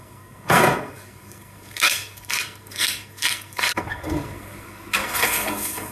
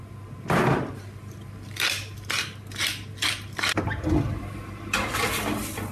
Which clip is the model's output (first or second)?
first